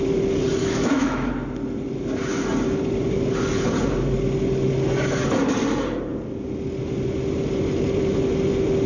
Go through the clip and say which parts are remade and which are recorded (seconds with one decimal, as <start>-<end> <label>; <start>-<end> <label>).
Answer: 0.0-0.6 recorded; 0.6-1.3 remade; 1.3-8.9 recorded

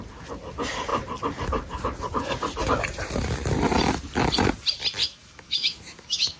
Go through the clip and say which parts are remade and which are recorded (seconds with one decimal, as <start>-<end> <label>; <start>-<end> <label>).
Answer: 0.0-5.0 recorded; 5.0-6.4 remade

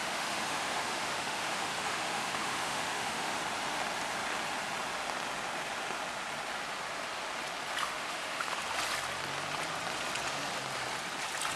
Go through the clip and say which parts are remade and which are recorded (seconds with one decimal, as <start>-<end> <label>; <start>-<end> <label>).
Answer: 0.0-3.4 remade; 3.4-7.8 recorded; 7.8-8.6 remade; 8.6-11.6 recorded

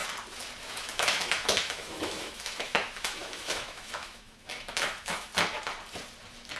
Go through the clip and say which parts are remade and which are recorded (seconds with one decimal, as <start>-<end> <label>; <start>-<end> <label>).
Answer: 0.0-0.6 recorded; 0.6-5.3 remade; 5.3-6.6 recorded